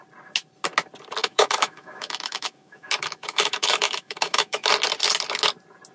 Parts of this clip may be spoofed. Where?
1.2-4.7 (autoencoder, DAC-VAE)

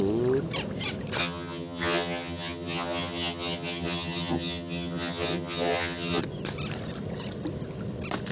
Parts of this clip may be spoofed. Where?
1.2-6.2 (vocoder, HiFi-GAN)